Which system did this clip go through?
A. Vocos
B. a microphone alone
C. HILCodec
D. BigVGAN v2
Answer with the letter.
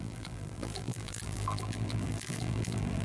D